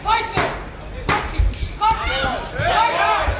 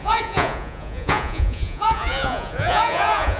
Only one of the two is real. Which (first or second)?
first